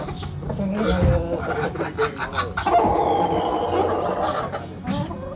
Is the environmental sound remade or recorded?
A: recorded